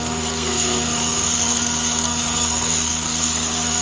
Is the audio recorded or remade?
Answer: remade